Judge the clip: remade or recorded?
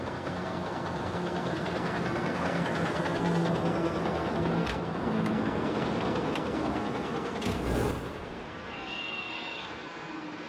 remade